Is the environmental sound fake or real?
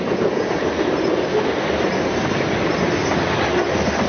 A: real